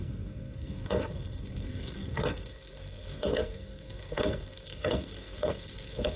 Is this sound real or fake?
fake